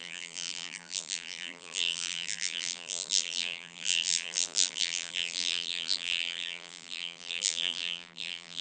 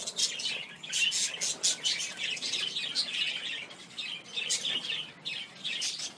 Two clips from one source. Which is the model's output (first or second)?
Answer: first